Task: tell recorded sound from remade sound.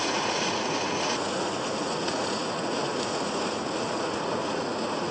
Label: remade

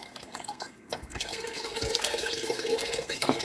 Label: remade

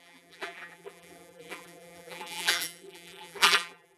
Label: remade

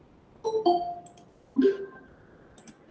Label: recorded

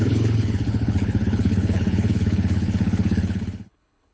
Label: remade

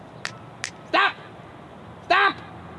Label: recorded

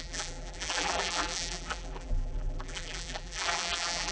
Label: remade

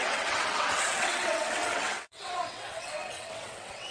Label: remade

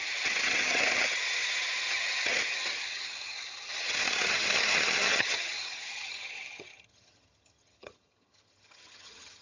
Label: remade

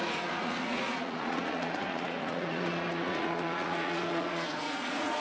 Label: remade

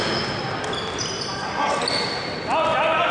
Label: recorded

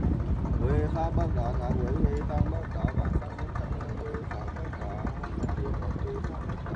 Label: recorded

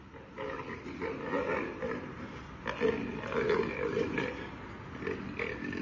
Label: recorded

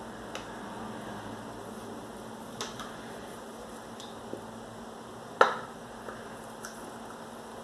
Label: recorded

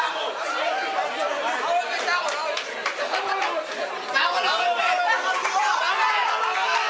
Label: recorded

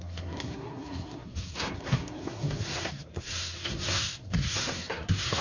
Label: remade